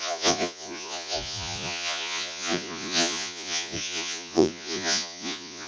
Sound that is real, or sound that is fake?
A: fake